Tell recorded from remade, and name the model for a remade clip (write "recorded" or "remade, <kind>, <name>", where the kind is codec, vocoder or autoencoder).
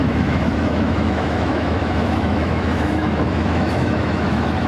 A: remade, autoencoder, DAC-VAE